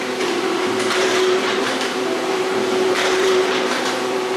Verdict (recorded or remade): remade